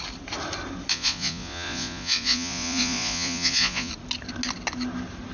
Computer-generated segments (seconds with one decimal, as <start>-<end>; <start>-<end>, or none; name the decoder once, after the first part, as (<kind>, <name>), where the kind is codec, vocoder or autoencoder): 0.9-3.9 (vocoder, Vocos)